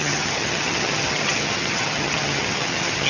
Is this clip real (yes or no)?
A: no